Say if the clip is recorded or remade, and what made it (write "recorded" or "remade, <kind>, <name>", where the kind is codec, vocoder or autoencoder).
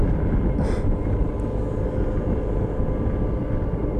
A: recorded